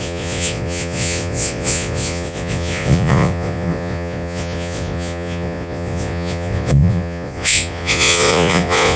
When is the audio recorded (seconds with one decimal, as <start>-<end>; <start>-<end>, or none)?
none